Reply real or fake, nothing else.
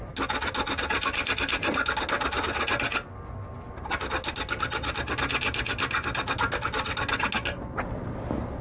real